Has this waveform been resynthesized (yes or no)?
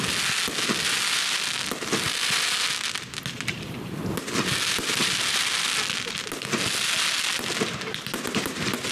no